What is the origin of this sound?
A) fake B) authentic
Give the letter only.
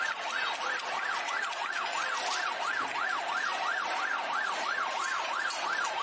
A